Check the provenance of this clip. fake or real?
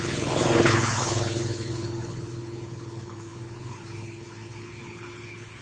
fake